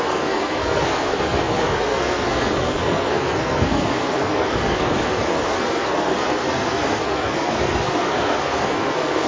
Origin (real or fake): fake